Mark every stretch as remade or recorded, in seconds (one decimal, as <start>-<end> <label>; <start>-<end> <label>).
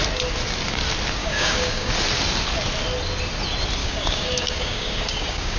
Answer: 0.0-1.2 recorded; 1.2-1.9 remade; 1.9-3.8 recorded; 3.8-5.6 remade